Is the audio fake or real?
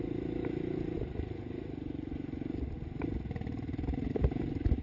real